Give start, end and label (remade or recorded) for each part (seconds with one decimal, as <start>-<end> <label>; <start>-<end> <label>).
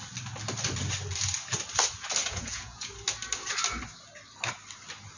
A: 0.0-2.2 recorded; 2.2-2.9 remade; 2.9-5.2 recorded